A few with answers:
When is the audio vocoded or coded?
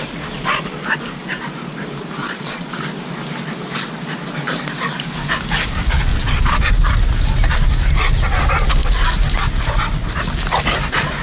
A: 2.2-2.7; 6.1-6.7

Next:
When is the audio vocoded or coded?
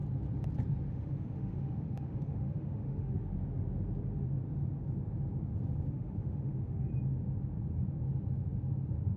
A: 0.9-3.3; 5.9-6.9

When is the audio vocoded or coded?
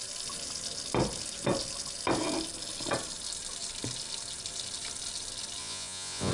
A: 5.6-6.3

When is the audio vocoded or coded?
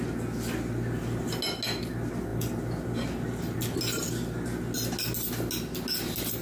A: none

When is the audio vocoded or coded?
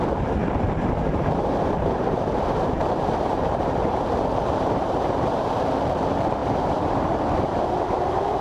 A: 0.4-5.4; 6.4-8.4